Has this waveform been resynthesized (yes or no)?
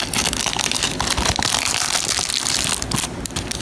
no